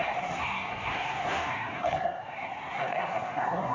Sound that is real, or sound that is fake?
fake